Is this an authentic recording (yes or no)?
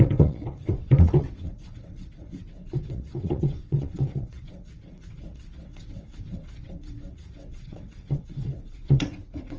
no